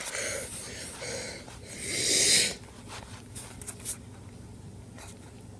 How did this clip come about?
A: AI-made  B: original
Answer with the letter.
B